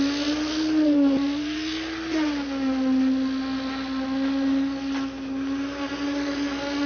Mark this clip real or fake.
real